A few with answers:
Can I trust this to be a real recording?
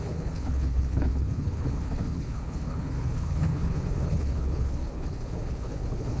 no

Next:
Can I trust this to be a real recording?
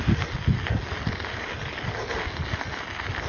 yes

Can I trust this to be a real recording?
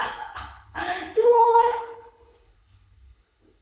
no